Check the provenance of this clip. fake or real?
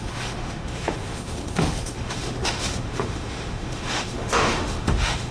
fake